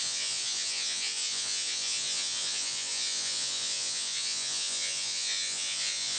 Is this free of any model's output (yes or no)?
no